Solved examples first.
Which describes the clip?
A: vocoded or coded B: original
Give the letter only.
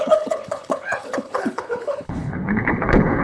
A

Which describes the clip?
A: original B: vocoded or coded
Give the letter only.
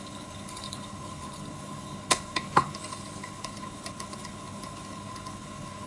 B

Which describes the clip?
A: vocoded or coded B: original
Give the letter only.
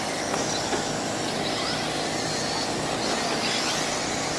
B